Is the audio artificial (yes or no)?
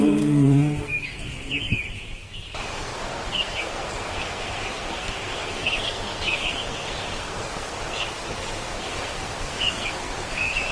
yes